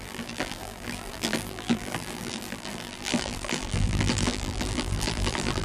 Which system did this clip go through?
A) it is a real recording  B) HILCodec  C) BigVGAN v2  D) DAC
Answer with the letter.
C